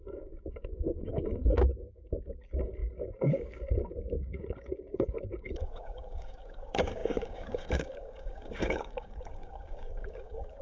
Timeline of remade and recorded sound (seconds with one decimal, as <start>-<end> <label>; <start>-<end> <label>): 0.0-10.6 remade